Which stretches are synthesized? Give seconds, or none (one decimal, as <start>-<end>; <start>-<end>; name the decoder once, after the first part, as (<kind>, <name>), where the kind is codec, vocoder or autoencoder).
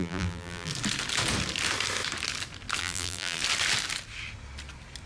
0.0-0.7 (vocoder, BigVGAN v2); 2.8-3.4